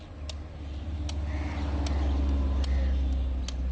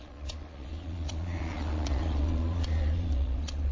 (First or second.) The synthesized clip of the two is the second